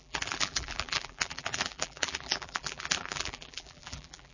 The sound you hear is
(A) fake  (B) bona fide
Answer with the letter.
A